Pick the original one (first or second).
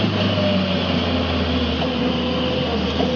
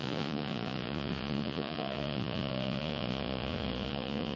first